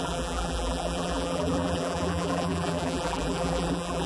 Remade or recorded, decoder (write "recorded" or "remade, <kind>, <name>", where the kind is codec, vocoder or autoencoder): remade, vocoder, BigVGAN v2